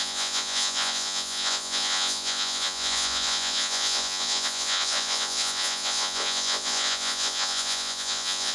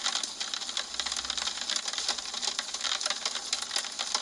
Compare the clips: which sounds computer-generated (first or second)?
first